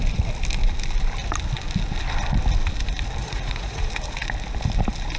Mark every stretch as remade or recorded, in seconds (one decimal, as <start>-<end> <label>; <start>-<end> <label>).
0.0-3.2 recorded; 3.2-3.9 remade; 3.9-5.2 recorded